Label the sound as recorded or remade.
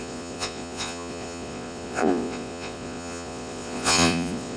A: remade